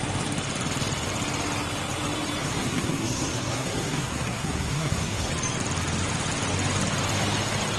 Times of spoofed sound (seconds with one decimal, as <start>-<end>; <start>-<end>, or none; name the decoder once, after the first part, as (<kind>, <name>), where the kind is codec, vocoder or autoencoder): 2.4-5.3 (codec, SNAC)